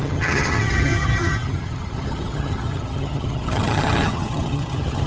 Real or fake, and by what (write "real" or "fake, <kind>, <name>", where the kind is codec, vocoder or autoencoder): fake, vocoder, HiFi-GAN